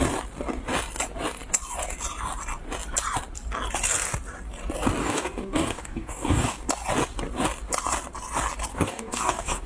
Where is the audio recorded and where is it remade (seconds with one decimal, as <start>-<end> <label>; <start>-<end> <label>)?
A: 0.0-5.0 recorded; 5.0-6.7 remade; 6.7-8.7 recorded; 8.7-9.7 remade